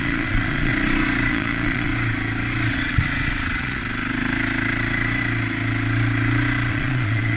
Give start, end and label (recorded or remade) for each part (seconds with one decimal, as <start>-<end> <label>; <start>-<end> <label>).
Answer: 0.0-0.7 remade; 0.7-1.3 recorded; 1.3-1.9 remade; 1.9-2.7 recorded; 2.7-3.8 remade; 3.8-6.7 recorded; 6.7-7.4 remade